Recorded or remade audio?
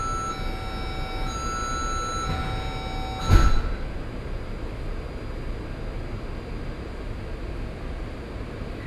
recorded